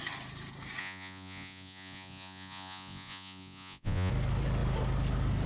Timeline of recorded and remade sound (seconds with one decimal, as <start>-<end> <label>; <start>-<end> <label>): 0.0-0.8 recorded; 0.8-4.1 remade; 4.1-5.5 recorded